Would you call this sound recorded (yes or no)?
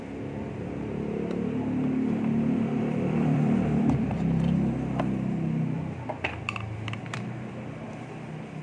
no